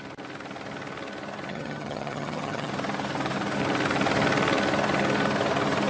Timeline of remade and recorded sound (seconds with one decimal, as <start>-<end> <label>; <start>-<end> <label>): 0.0-1.5 recorded; 1.5-2.7 remade; 2.7-5.9 recorded